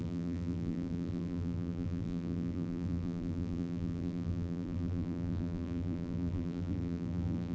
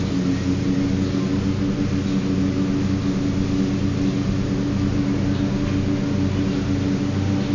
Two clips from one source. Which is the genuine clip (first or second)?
second